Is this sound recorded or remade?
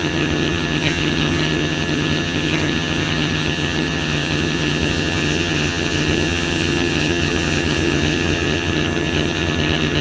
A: remade